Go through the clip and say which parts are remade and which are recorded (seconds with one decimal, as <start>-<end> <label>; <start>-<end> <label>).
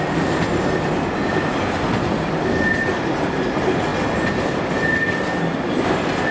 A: 0.0-6.3 recorded